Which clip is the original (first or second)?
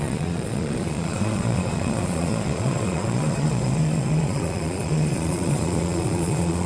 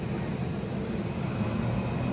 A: second